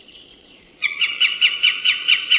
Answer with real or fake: fake